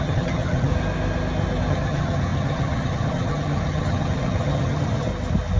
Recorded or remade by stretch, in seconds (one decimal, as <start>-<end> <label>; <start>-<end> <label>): 0.0-0.7 remade; 0.7-1.7 recorded; 1.7-5.1 remade; 5.1-5.6 recorded